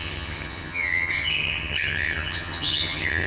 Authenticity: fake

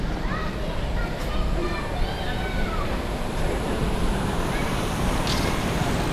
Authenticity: fake